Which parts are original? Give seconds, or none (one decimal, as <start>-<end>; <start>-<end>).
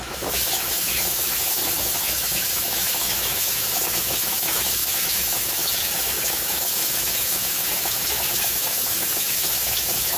none